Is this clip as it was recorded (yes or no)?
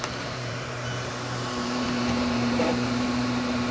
no